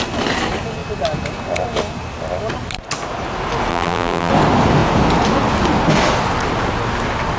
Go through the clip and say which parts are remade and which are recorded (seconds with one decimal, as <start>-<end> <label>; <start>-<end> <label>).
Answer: 0.0-3.7 recorded; 3.7-4.3 remade; 4.3-7.4 recorded

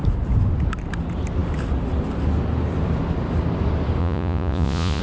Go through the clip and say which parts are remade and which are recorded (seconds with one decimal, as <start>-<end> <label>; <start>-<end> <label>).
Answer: 0.0-4.0 recorded; 4.0-5.0 remade